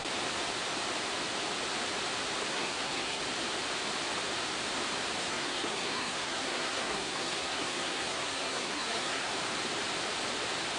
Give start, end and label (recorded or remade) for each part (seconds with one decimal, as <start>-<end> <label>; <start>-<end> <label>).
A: 0.0-2.5 recorded; 2.5-3.2 remade; 3.2-5.2 recorded; 5.2-9.3 remade; 9.3-10.8 recorded